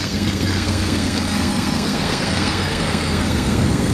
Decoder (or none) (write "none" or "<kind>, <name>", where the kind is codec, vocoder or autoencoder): codec, SNAC